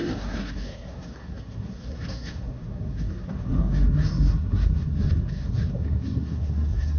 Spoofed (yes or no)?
yes